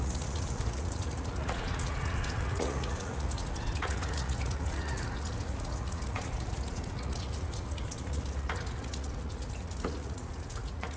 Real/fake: fake